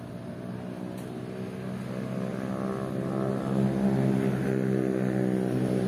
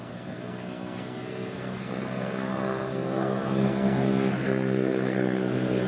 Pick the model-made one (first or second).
second